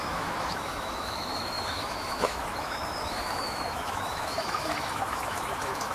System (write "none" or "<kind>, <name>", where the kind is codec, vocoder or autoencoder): autoencoder, DAC-VAE